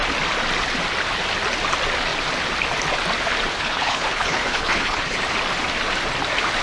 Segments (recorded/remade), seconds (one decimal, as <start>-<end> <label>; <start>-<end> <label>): 0.0-3.5 recorded; 3.5-5.2 remade; 5.2-6.6 recorded